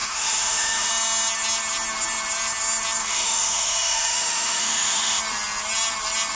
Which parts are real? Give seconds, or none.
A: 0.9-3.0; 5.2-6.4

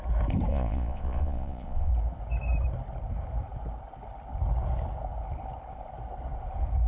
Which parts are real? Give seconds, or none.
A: 0.0-0.5; 1.9-6.9

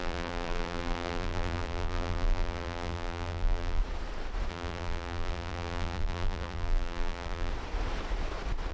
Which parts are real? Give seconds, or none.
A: 3.8-4.5; 7.5-8.7

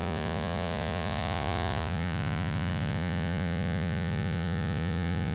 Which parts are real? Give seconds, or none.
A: none

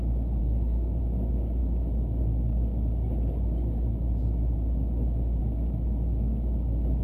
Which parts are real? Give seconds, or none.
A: 0.0-0.4; 1.0-7.0

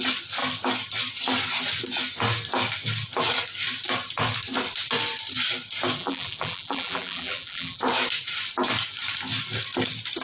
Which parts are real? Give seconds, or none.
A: 0.0-6.0; 7.8-10.2

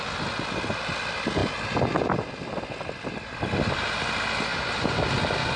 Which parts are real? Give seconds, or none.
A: 0.0-5.6

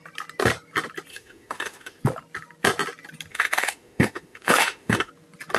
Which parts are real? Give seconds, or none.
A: 0.0-1.1; 2.0-3.3; 5.1-5.6